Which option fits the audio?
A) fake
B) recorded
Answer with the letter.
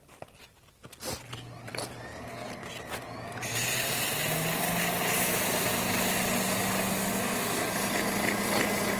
B